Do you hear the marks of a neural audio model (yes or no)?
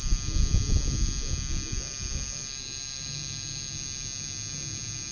no